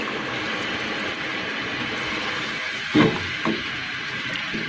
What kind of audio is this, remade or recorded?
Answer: recorded